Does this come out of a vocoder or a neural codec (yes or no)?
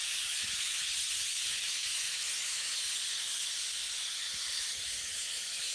yes